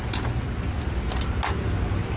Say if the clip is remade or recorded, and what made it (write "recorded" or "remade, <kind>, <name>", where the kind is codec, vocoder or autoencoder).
recorded